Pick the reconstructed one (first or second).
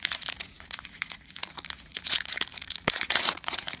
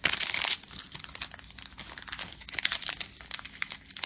first